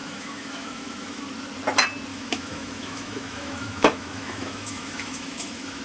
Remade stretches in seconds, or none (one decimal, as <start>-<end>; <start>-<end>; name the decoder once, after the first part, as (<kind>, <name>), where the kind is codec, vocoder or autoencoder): 0.0-1.2 (autoencoder, DAC-VAE); 2.1-5.8